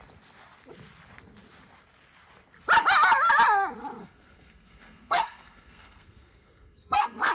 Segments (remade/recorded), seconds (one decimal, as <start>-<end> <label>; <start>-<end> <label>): 0.0-4.0 recorded; 4.0-7.3 remade